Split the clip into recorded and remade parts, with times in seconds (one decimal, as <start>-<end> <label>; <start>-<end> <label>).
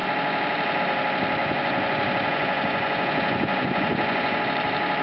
0.0-1.4 recorded; 1.4-4.4 remade; 4.4-5.0 recorded